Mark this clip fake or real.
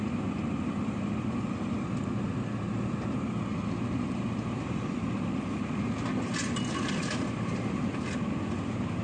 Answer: real